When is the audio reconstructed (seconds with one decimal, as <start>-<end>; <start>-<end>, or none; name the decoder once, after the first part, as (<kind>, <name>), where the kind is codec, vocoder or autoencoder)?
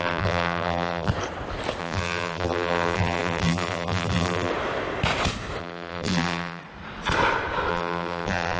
0.0-1.1 (vocoder, BigVGAN v2); 1.8-4.5; 5.6-6.6; 7.7-8.6